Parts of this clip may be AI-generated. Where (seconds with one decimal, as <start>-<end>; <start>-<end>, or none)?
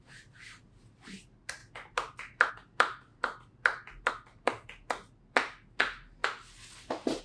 none